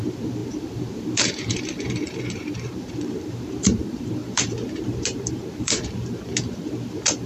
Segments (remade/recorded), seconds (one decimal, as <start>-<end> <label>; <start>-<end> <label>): 0.0-7.3 remade